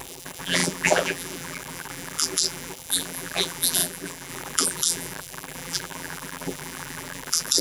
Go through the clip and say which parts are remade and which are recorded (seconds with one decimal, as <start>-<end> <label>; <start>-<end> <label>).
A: 0.0-7.6 remade